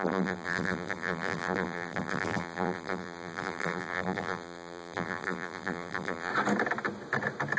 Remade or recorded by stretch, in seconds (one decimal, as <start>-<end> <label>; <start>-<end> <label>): 0.0-6.3 remade; 6.3-7.6 recorded